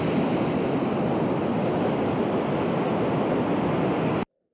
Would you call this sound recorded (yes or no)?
yes